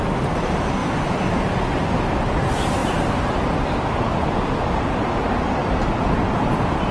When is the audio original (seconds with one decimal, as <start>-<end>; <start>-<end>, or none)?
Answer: 0.0-0.8; 1.4-2.8; 3.4-5.6

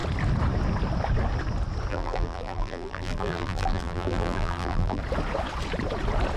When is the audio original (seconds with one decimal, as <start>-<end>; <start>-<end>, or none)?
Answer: 0.0-1.9; 5.0-6.4

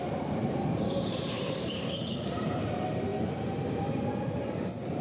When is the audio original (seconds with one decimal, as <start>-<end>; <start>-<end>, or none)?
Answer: 0.0-0.4; 2.7-3.1; 4.1-5.0

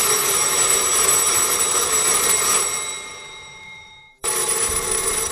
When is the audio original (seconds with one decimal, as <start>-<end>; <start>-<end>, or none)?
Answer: none

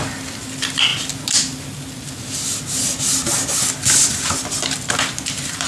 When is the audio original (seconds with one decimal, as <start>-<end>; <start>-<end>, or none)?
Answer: 0.9-4.3

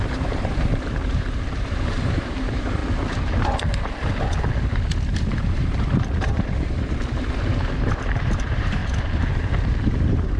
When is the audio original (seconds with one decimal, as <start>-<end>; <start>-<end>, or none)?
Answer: 2.8-5.3; 8.8-9.3

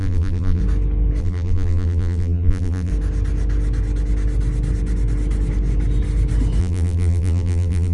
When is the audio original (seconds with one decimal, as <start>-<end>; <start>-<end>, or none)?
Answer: 0.6-1.2; 2.9-6.6